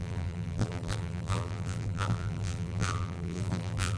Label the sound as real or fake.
fake